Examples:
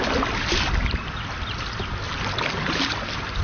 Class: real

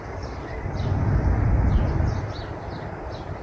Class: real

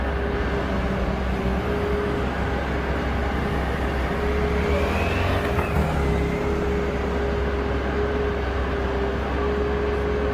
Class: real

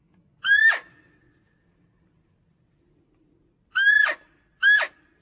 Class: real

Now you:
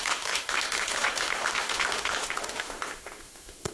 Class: fake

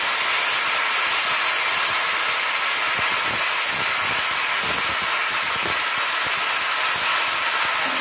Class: real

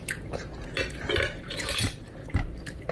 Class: real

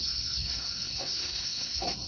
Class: fake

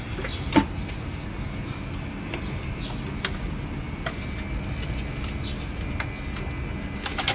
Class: real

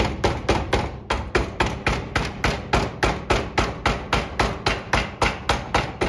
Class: real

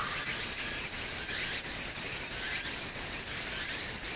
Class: real